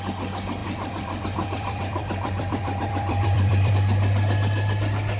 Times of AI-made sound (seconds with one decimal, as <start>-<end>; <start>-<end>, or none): 0.6-3.7